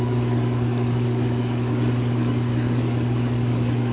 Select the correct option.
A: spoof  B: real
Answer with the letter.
A